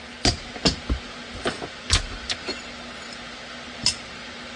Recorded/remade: recorded